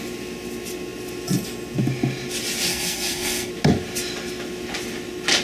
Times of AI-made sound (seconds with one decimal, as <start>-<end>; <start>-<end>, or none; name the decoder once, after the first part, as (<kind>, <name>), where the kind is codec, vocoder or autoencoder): 2.7-3.5 (codec, SNAC)

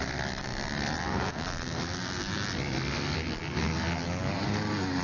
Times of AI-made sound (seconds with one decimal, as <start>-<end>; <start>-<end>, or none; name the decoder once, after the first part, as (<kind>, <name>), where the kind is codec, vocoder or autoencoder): none

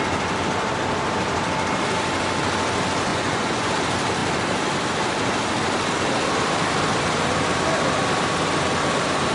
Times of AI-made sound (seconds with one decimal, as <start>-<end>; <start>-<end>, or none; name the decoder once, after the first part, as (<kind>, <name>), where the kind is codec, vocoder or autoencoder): 3.1-3.7 (vocoder, Vocos)

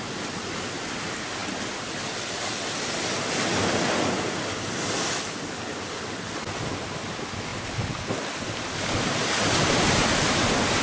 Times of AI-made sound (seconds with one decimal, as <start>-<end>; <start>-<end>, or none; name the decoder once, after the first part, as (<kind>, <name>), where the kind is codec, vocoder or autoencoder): none

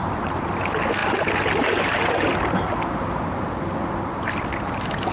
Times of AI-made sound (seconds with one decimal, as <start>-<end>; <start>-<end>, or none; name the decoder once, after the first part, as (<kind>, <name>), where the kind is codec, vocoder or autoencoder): none

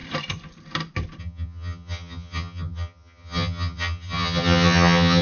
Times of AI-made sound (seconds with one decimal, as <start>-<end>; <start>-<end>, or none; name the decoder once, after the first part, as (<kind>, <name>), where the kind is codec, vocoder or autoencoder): 1.2-5.2 (vocoder, HiFi-GAN)